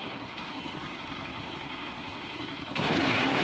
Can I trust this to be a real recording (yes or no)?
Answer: no